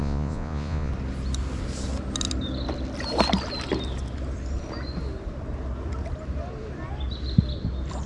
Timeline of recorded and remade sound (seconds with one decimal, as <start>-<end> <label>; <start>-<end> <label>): 0.0-0.9 remade; 0.9-8.1 recorded